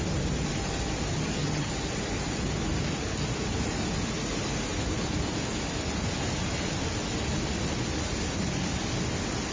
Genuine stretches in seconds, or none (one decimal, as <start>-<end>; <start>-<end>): 0.0-1.1; 1.7-9.5